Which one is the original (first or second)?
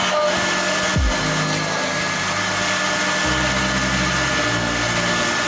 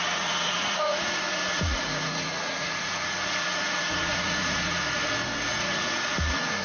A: first